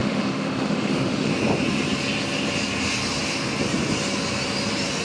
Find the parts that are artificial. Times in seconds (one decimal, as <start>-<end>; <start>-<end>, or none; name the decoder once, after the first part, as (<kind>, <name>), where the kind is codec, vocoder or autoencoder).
0.0-1.3 (autoencoder, DAC-VAE)